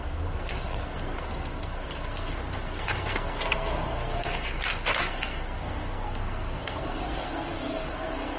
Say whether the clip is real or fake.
fake